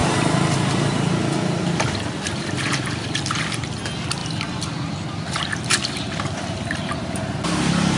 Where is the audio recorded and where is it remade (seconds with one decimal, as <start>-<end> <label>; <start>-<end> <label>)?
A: 0.0-3.7 remade; 3.7-4.2 recorded; 4.2-7.2 remade; 7.2-8.0 recorded